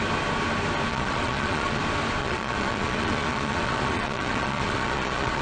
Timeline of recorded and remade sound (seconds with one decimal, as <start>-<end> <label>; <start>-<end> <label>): 0.0-0.9 recorded; 0.9-1.8 remade; 1.8-2.2 recorded; 2.2-5.4 remade